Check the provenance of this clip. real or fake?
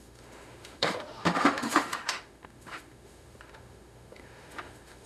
fake